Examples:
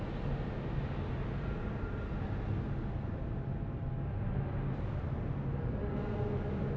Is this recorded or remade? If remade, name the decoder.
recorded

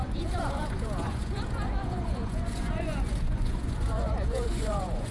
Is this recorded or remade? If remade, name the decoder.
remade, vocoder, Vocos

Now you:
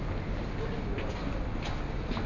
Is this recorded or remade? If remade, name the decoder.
recorded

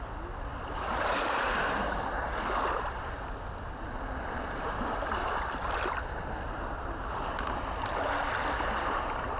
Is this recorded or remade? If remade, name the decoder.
recorded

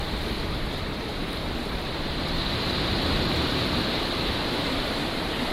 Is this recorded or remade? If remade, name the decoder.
remade, vocoder, BigVGAN v2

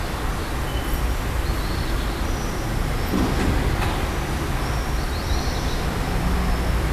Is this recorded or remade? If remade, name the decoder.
recorded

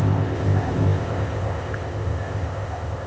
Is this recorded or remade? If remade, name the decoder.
remade, codec, ZipCodec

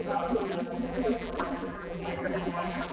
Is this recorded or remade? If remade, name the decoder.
remade, vocoder, BigVGAN v2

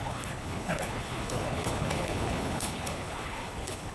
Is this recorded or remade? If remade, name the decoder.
remade, codec, HILCodec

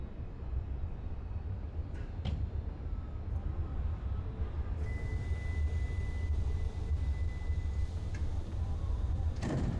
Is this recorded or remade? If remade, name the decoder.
recorded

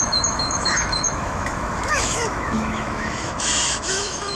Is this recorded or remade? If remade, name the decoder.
remade, autoencoder, DAC-VAE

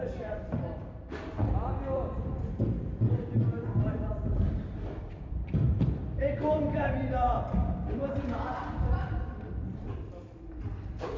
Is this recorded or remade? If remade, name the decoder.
remade, vocoder, BigVGAN v2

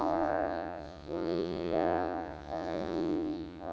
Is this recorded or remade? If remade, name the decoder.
remade, vocoder, Vocos